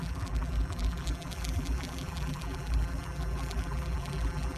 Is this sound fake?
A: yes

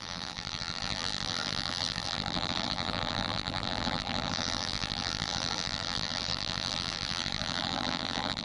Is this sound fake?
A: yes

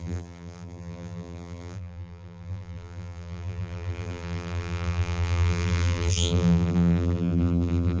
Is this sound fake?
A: yes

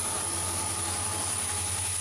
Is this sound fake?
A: no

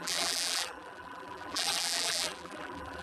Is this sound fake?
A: yes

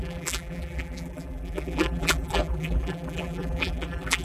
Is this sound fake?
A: yes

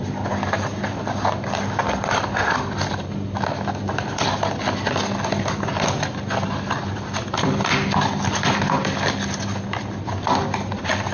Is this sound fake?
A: yes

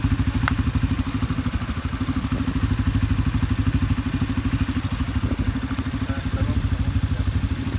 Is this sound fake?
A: no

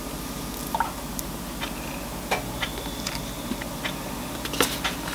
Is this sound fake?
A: no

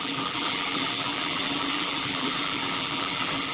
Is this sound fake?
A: yes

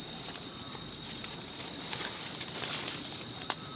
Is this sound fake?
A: yes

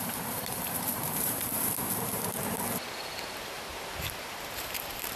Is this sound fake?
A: yes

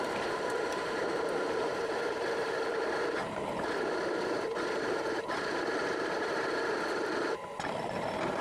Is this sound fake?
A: yes